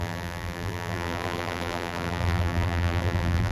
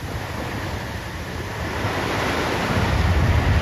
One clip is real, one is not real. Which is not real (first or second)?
first